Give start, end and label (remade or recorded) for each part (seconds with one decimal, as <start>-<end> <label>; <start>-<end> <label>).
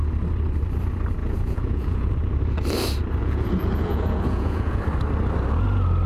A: 0.0-1.2 recorded; 1.2-2.1 remade; 2.1-3.2 recorded; 3.2-4.8 remade; 4.8-6.1 recorded